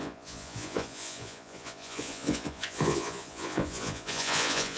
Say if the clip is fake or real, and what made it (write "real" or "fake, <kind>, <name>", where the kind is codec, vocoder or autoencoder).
fake, vocoder, Vocos